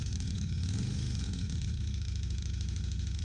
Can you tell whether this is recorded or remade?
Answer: remade